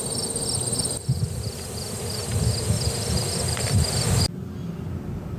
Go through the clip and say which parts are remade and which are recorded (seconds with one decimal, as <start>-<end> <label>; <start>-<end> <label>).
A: 0.0-5.4 recorded